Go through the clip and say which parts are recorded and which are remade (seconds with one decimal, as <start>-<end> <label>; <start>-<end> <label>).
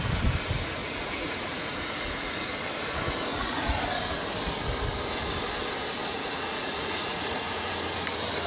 0.0-0.8 recorded; 0.8-2.6 remade; 2.6-3.3 recorded; 3.3-3.8 remade; 3.8-6.1 recorded; 6.1-7.7 remade; 7.7-8.5 recorded